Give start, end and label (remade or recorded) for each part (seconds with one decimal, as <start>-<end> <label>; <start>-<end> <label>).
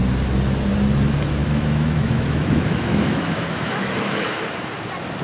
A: 0.0-1.4 recorded; 1.4-4.2 remade; 4.2-5.2 recorded